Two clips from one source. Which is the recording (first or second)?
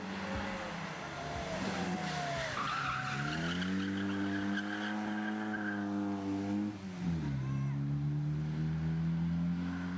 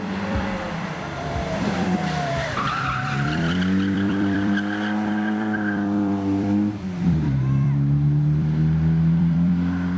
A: first